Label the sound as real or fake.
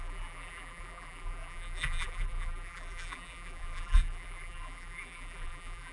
fake